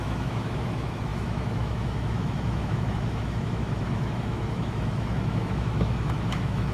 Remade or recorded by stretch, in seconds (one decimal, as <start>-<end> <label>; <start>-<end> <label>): 0.0-6.7 remade